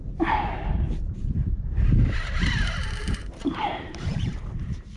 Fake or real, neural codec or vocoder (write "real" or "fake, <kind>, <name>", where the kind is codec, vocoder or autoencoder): fake, vocoder, BigVGAN v2